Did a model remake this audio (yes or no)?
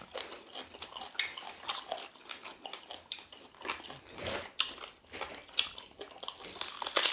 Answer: no